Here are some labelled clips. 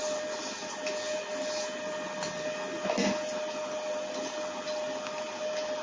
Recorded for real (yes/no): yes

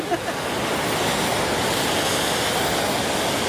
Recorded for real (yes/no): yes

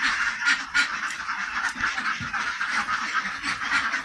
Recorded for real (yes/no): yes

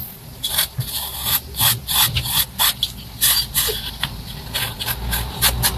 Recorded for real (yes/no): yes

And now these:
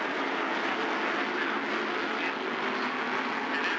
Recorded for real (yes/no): yes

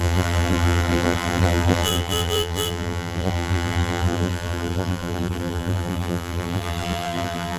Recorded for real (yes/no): no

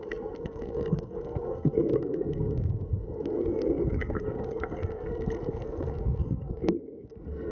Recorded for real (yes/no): no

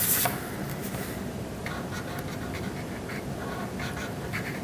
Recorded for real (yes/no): yes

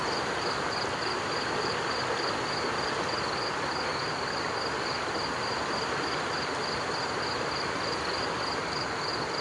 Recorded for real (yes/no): yes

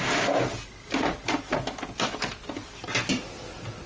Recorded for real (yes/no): yes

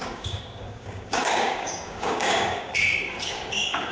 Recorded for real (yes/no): no